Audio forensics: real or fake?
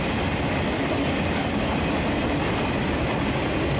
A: real